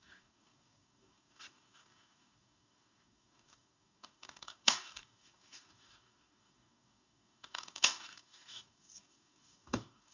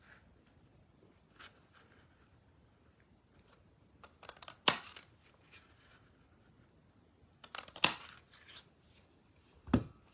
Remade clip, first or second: first